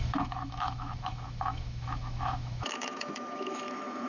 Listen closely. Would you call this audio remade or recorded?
remade